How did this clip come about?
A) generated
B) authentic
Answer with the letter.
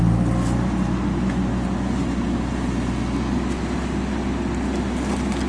B